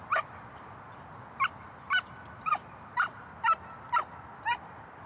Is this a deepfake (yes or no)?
no